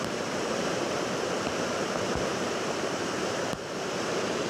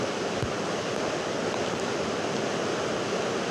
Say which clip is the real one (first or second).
second